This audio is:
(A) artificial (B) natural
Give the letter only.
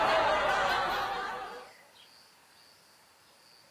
B